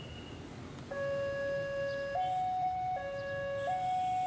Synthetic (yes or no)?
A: no